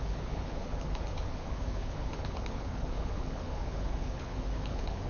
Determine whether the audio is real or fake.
fake